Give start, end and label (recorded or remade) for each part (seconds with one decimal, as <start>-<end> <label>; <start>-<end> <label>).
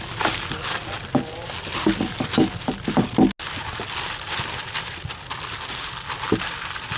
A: 0.0-7.0 recorded